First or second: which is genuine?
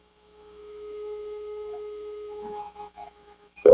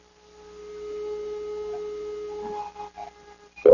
second